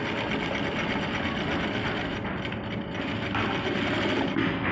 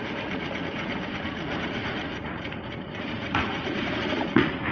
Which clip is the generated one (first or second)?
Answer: second